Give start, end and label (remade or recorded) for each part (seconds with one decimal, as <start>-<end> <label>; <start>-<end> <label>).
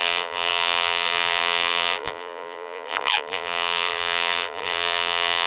0.0-5.5 remade